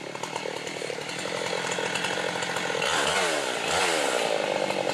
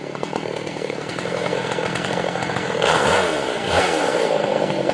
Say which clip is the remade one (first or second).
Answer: second